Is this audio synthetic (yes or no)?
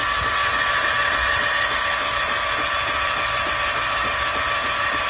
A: no